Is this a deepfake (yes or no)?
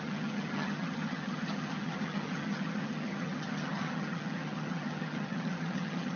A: yes